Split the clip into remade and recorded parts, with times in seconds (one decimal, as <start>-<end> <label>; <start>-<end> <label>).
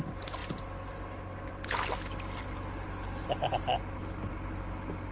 0.0-5.1 recorded